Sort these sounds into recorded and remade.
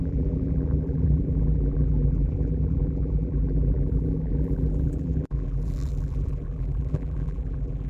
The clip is remade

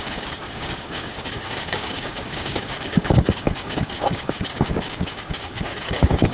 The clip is remade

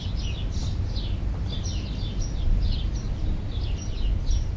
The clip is recorded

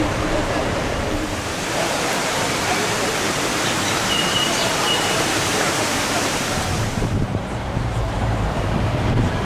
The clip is remade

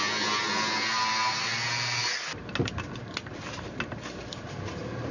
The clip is recorded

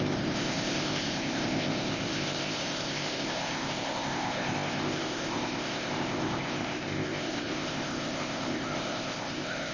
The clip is remade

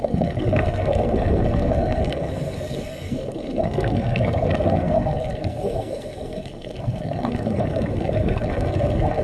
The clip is remade